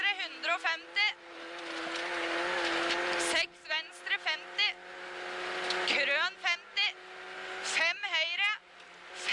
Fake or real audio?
real